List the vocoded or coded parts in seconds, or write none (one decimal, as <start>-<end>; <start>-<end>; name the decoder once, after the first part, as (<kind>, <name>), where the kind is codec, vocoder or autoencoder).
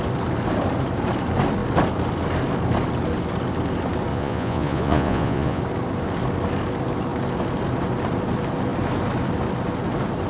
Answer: 4.1-5.6 (vocoder, Vocos)